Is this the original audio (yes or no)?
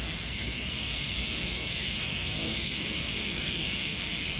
no